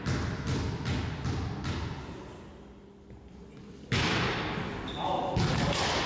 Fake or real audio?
real